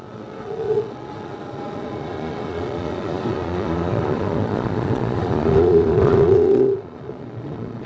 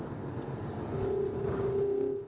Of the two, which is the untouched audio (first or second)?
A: second